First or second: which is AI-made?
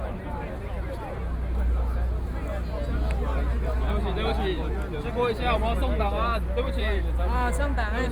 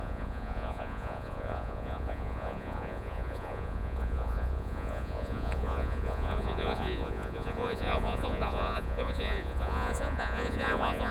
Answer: second